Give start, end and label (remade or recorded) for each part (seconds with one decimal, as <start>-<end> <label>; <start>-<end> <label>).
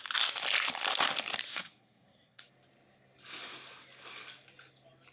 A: 0.0-1.5 recorded; 1.5-2.4 remade; 2.4-5.1 recorded